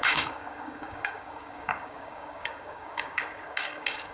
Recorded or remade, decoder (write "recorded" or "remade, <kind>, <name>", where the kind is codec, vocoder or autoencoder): remade, codec, DAC